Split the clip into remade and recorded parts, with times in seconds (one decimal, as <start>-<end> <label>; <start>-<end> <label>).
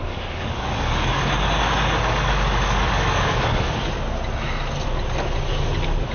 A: 0.0-3.7 remade; 3.7-6.1 recorded